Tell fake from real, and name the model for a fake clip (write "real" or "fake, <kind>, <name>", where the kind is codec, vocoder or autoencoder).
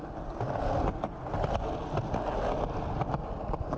real